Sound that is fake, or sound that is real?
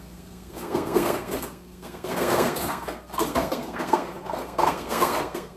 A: fake